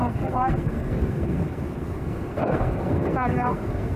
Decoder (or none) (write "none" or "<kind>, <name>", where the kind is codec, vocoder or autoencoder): codec, SNAC